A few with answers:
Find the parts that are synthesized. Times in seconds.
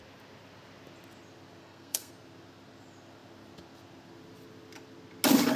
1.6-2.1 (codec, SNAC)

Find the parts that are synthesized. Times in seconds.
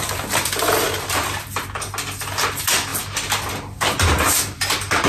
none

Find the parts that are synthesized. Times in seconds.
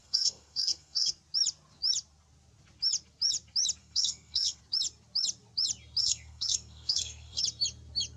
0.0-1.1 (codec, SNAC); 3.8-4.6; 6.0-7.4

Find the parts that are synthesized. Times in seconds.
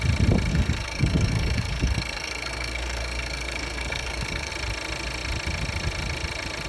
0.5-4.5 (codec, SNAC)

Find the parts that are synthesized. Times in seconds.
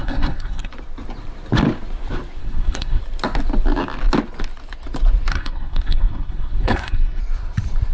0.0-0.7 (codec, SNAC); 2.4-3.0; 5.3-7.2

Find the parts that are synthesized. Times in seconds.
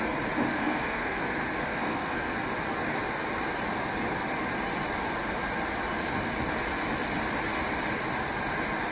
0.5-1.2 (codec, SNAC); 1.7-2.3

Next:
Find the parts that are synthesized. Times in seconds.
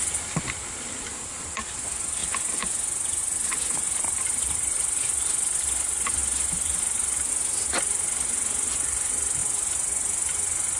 none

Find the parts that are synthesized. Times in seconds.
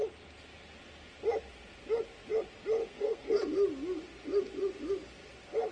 2.8-3.3 (codec, SNAC)